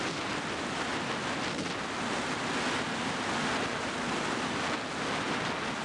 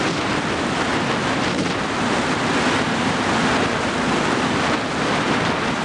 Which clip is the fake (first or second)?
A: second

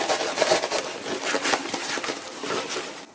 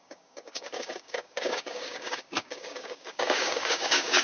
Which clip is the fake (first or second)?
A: second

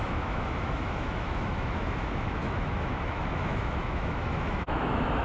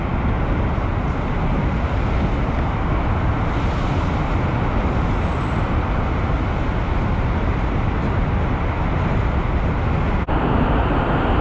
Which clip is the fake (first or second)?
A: first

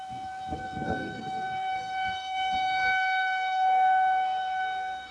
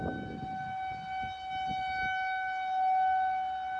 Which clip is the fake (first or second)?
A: first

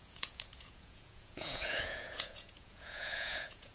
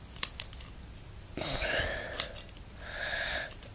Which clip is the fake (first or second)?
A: first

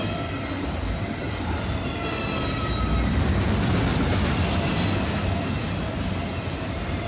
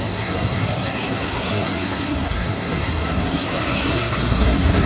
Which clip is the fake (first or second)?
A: second